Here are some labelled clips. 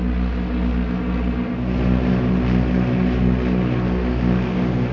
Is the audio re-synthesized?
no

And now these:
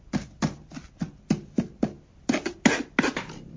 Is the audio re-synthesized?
no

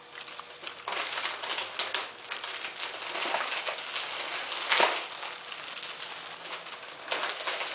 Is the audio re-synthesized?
no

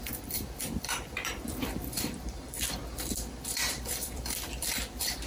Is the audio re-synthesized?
yes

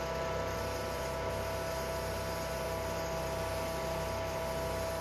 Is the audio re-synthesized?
no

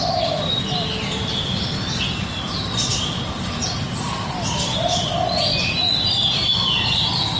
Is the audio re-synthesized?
no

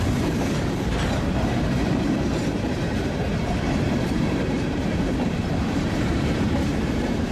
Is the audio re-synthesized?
yes